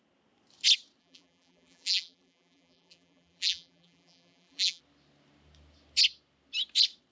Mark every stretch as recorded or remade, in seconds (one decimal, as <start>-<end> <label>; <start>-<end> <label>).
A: 0.0-1.0 recorded; 1.0-4.8 remade; 4.8-7.1 recorded